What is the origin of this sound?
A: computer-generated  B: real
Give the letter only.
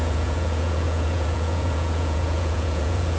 A